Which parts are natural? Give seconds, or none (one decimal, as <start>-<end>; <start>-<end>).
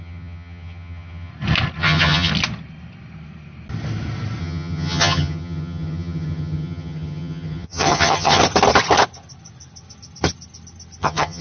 1.3-1.8; 2.3-4.4; 8.4-11.0